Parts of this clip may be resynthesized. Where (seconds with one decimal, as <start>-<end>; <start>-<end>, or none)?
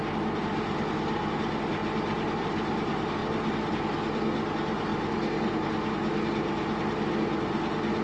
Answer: none